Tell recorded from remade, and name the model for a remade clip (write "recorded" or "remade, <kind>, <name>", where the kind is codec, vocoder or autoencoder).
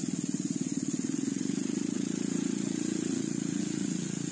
remade, vocoder, Vocos